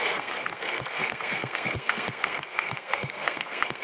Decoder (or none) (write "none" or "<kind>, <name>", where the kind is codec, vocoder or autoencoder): codec, SNAC